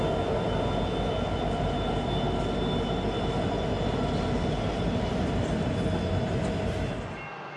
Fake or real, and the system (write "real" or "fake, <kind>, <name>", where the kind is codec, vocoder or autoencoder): real